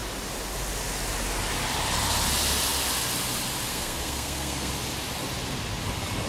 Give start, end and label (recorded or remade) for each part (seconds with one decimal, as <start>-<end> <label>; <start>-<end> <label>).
0.0-3.7 recorded; 3.7-4.7 remade; 4.7-6.3 recorded